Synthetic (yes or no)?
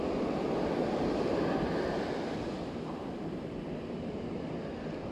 no